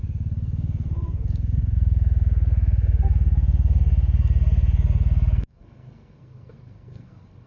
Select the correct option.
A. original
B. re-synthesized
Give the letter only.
B